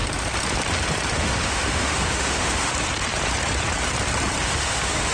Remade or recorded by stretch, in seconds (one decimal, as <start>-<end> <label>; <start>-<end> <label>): 0.0-1.1 recorded; 1.1-2.7 remade; 2.7-4.4 recorded; 4.4-5.1 remade